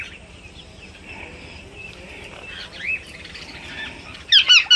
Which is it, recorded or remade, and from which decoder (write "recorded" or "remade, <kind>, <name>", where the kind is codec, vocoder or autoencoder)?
recorded